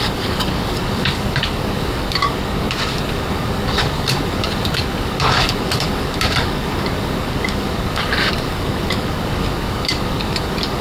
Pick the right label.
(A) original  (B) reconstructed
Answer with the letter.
B